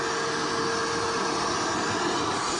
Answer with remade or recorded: recorded